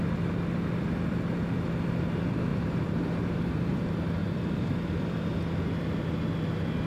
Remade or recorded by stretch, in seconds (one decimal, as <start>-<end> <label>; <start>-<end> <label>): 0.0-2.5 recorded; 2.5-3.8 remade; 3.8-4.2 recorded; 4.2-4.9 remade; 4.9-6.9 recorded